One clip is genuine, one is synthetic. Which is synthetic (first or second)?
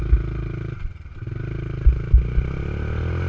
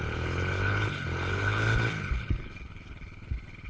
second